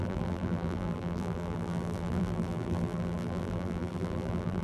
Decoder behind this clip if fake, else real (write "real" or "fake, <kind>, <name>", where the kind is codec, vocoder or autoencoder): fake, vocoder, BigVGAN v2